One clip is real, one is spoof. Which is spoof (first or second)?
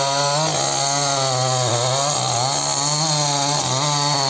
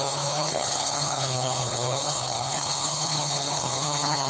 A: second